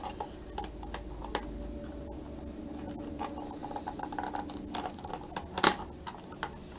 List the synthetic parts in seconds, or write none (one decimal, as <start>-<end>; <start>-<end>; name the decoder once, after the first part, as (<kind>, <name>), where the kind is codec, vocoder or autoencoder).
none